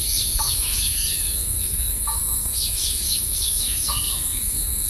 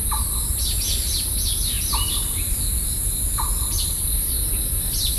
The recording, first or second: second